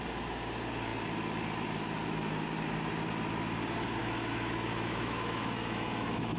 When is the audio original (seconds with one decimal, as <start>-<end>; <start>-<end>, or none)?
0.0-4.0